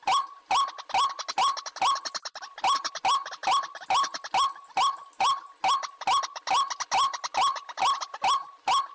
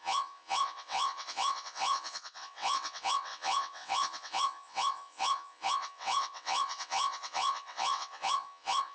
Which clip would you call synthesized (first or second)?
second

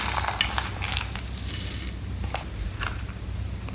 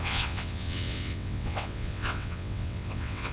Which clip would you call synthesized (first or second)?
second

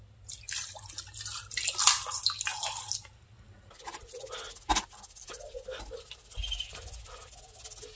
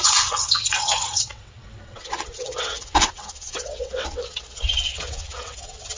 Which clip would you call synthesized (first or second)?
second